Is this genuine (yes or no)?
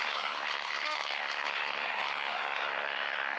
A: no